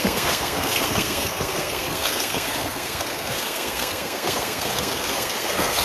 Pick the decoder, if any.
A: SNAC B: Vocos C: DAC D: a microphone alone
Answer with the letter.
A